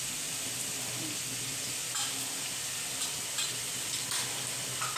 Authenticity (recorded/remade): recorded